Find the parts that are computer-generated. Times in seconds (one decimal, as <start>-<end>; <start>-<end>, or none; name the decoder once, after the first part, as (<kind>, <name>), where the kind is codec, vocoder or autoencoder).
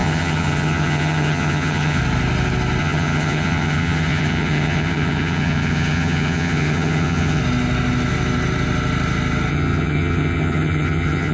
0.0-2.0 (vocoder, HiFi-GAN); 2.8-7.4; 9.5-11.3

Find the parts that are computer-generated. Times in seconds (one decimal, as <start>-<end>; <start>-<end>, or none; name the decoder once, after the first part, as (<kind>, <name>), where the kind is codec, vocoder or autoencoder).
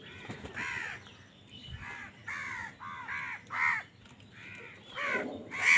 none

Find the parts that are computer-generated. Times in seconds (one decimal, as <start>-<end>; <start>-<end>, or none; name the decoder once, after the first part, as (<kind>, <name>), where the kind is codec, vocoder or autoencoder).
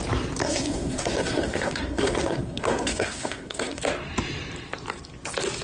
0.4-3.8 (codec, SNAC)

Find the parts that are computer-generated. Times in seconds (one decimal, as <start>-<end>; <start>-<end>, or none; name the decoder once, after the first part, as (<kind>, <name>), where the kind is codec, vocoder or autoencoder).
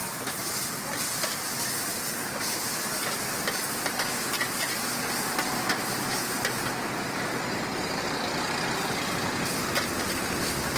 0.0-1.2 (vocoder, BigVGAN v2); 1.9-3.0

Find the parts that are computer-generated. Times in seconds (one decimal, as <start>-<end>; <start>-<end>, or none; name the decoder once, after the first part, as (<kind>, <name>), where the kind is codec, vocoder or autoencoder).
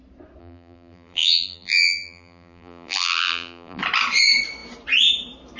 0.4-3.8 (vocoder, BigVGAN v2)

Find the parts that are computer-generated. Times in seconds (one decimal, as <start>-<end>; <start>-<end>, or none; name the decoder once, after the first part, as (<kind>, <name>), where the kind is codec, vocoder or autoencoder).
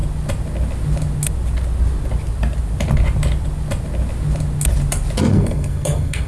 5.3-6.3 (codec, SNAC)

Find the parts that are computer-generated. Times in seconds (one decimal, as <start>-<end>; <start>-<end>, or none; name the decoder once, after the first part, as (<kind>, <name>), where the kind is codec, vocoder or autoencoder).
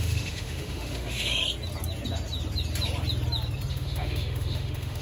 0.0-1.4 (autoencoder, DAC-VAE); 3.7-5.0